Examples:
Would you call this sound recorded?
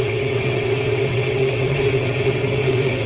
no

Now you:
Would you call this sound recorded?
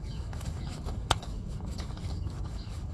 no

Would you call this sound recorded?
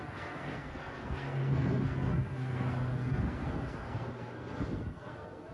no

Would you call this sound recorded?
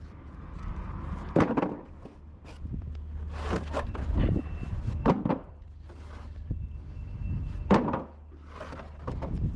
yes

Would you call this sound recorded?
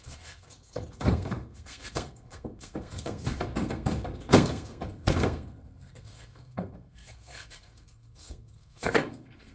no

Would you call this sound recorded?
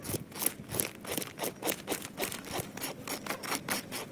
yes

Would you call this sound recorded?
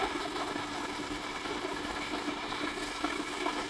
yes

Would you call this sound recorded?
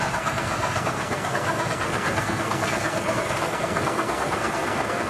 no